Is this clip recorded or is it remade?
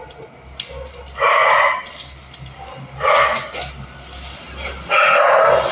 recorded